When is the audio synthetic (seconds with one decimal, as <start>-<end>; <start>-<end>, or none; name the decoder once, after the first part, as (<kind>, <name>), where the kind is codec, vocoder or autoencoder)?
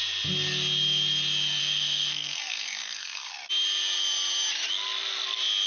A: 1.6-3.3 (codec, SNAC)